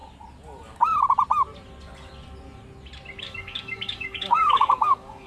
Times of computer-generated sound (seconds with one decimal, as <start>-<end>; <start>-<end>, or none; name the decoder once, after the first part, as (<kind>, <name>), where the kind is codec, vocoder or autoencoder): 3.2-5.3 (codec, DAC)